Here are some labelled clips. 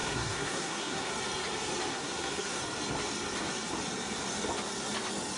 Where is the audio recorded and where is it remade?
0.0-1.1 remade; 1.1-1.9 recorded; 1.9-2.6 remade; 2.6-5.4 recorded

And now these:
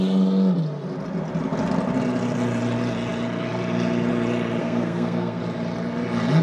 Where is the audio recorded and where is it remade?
0.0-4.6 recorded; 4.6-5.4 remade; 5.4-6.4 recorded

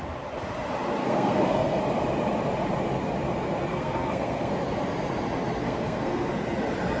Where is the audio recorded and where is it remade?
0.0-1.0 recorded; 1.0-1.8 remade; 1.8-3.7 recorded; 3.7-4.5 remade; 4.5-5.6 recorded; 5.6-6.3 remade; 6.3-7.0 recorded

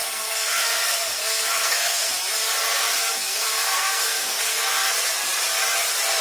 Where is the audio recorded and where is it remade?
0.0-2.1 remade; 2.1-2.6 recorded; 2.6-4.9 remade; 4.9-6.2 recorded

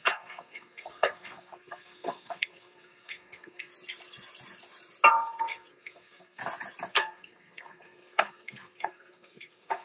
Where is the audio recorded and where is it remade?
0.0-3.7 remade; 3.7-5.1 recorded; 5.1-6.4 remade; 6.4-6.9 recorded; 6.9-9.8 remade